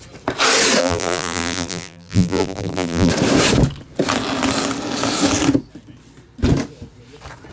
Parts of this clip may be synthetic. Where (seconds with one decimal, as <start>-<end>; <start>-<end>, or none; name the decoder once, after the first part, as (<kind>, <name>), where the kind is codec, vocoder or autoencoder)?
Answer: 0.8-3.1 (vocoder, BigVGAN v2)